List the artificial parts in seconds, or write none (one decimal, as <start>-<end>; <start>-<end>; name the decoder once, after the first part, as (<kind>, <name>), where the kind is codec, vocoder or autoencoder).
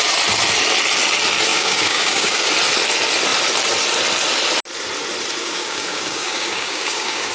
1.5-2.5 (codec, DAC); 5.4-7.3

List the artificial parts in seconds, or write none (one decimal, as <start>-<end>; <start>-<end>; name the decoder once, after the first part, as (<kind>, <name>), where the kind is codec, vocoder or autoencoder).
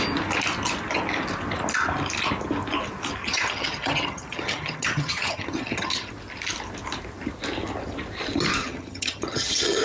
3.2-6.1 (vocoder, HiFi-GAN); 8.6-9.8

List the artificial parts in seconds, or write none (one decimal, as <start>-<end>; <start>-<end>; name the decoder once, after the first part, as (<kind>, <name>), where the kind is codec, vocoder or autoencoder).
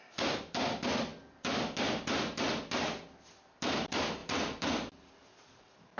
none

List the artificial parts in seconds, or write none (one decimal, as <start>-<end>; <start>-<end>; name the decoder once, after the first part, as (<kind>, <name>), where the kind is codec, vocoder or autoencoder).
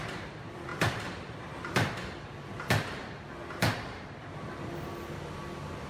0.7-3.3 (vocoder, BigVGAN v2)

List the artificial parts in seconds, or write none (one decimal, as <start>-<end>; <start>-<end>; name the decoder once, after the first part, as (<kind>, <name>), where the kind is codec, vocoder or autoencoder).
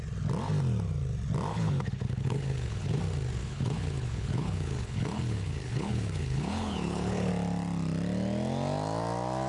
1.5-3.0 (codec, HILCodec); 3.4-7.3